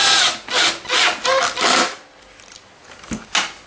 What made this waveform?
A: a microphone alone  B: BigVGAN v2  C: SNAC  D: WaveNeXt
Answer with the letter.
A